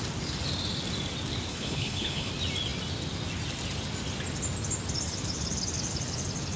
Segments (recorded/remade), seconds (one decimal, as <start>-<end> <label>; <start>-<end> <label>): 0.0-1.5 recorded; 1.5-2.3 remade; 2.3-6.6 recorded